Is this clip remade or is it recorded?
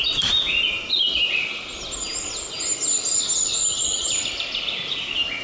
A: recorded